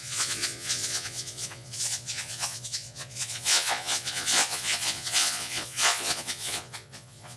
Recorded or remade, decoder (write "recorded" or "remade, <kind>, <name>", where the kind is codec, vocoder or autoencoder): remade, vocoder, Vocos